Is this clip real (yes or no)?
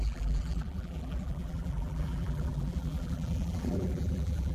no